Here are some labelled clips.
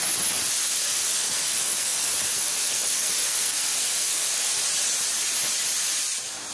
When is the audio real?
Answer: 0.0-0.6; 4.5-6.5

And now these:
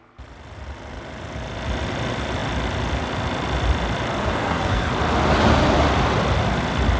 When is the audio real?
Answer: 0.0-4.2; 4.9-7.0

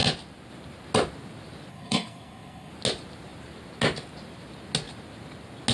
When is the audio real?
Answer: 0.0-1.7; 2.7-5.7

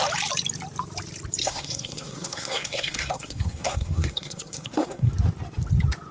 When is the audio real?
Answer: 0.0-1.4; 5.1-6.1

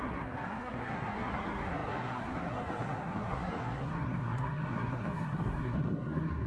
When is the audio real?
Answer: none

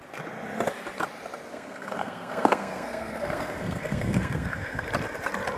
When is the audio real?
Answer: 0.0-1.5; 4.9-5.6